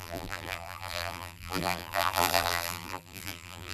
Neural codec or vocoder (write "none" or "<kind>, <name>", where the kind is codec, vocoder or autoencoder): vocoder, BigVGAN v2